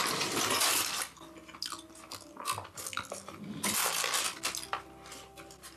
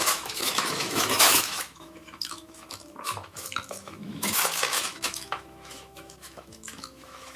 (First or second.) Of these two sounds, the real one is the first